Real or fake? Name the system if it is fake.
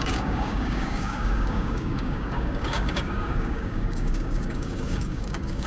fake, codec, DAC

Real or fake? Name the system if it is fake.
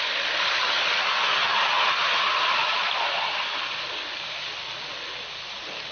real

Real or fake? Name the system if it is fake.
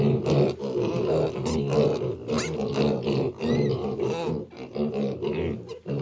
real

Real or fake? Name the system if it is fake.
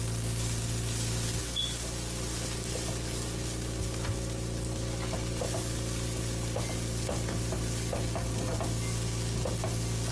real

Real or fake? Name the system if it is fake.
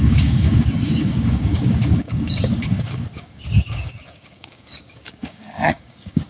fake, codec, DAC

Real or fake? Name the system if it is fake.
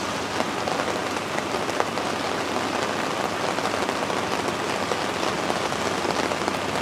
real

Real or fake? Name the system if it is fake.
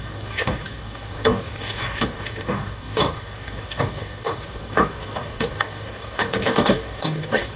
fake, codec, DAC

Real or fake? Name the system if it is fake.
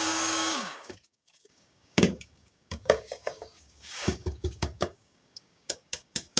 fake, codec, DAC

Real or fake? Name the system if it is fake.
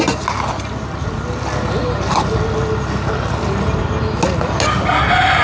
real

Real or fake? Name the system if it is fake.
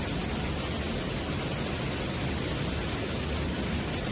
real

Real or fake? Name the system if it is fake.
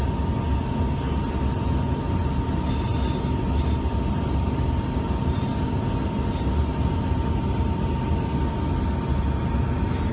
real